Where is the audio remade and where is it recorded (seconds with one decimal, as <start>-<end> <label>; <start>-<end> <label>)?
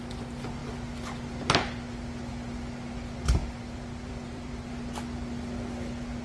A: 0.0-3.4 recorded; 3.4-4.7 remade; 4.7-6.2 recorded